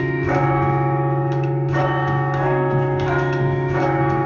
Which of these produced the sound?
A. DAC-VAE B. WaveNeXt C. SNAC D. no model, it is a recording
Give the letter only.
A